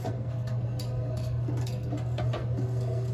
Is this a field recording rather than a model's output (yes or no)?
no